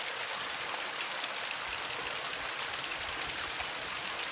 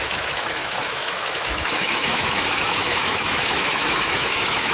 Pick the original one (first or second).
first